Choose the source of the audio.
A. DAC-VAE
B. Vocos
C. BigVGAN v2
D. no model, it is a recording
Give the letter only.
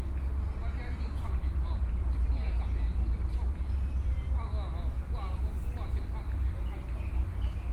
D